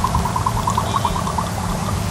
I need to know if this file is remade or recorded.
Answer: recorded